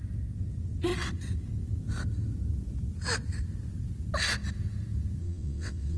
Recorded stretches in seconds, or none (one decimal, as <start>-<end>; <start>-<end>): 0.0-5.2